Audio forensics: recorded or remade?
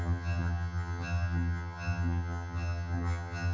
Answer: remade